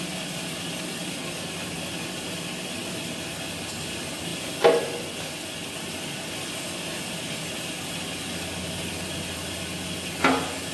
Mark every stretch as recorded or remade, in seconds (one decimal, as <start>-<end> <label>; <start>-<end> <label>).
0.0-10.7 recorded